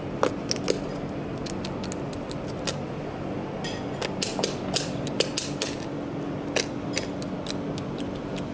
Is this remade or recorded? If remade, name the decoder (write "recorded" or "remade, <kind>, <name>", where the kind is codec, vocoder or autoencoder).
recorded